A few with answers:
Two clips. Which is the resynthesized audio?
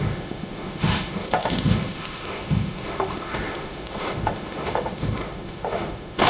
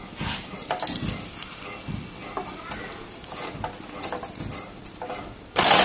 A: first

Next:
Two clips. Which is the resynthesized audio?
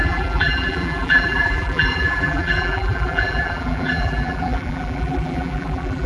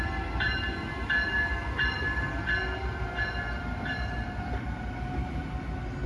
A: first